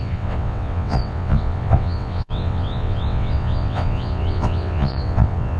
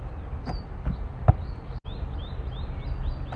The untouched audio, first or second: second